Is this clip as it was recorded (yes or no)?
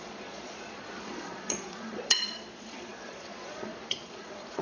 no